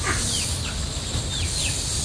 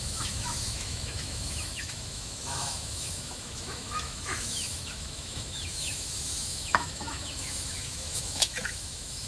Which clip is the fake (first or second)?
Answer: second